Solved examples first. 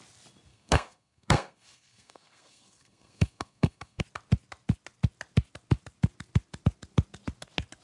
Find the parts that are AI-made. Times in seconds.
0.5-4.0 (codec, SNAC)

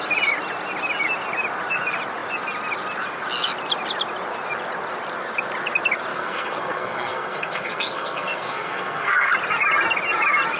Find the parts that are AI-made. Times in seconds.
6.1-9.3 (codec, SNAC)

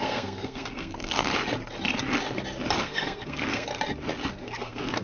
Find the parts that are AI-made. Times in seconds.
0.0-1.3 (codec, SNAC); 2.8-3.7; 4.3-5.0

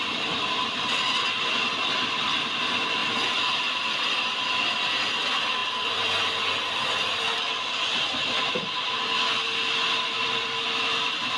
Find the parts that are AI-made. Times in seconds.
none